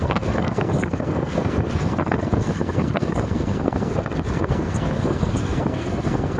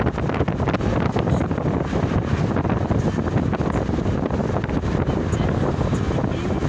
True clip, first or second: second